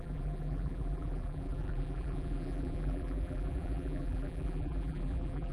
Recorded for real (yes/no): no